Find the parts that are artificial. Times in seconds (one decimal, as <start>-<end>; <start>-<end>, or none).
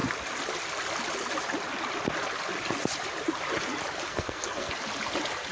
4.1-4.7